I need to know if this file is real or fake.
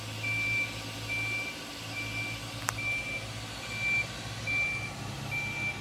real